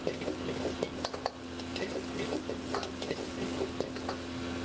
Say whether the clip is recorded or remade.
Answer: recorded